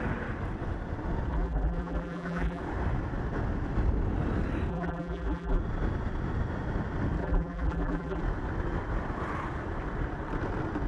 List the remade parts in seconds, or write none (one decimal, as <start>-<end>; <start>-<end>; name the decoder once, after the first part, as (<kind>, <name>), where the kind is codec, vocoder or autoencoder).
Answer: 1.3-2.6 (vocoder, BigVGAN v2); 4.7-5.6; 7.2-8.2